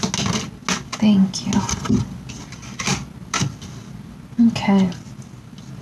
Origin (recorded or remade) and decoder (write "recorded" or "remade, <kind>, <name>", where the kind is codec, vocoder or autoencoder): recorded